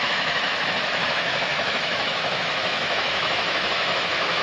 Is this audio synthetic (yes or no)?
yes